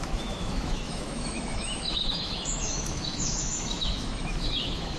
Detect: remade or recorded remade